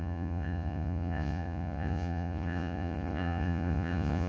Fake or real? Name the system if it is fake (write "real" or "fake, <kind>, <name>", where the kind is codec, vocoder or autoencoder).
fake, vocoder, Vocos